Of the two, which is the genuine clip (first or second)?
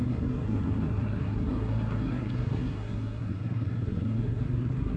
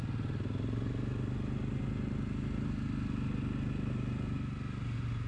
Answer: second